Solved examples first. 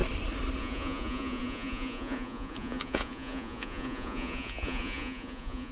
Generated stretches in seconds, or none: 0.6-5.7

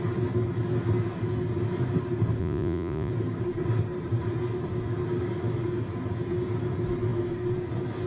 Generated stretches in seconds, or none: 2.4-3.1

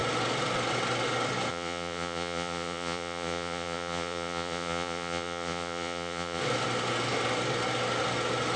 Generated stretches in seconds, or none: 1.5-6.4

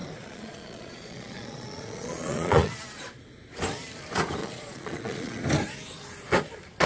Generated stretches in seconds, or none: 0.0-2.7; 4.4-5.4

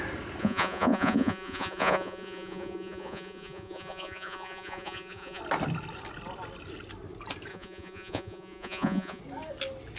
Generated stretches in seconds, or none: 0.4-5.4; 7.5-9.2

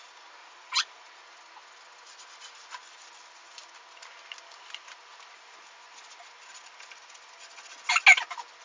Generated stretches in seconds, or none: 0.4-1.2